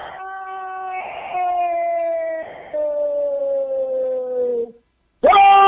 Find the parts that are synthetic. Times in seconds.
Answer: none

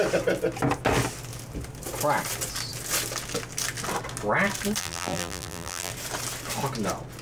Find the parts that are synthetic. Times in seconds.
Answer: 4.8-5.9 (vocoder, BigVGAN v2)

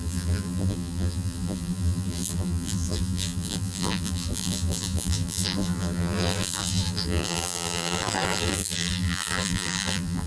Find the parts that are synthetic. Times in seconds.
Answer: 0.0-10.3 (vocoder, BigVGAN v2)

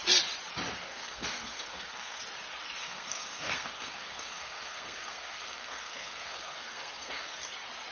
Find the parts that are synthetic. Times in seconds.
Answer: 0.8-2.2 (codec, SNAC); 2.8-7.5